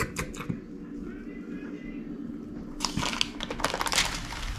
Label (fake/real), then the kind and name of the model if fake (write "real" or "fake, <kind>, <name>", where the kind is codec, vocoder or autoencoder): real